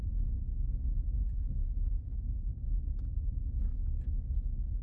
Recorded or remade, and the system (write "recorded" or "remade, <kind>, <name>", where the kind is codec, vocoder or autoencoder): recorded